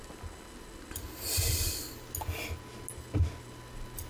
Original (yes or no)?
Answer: yes